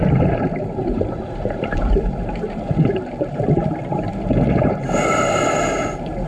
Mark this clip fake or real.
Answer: fake